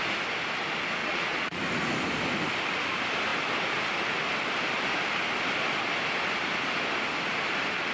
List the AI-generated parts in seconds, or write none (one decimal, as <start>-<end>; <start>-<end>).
1.0-1.6